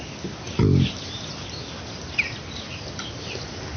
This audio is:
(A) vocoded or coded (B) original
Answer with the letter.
B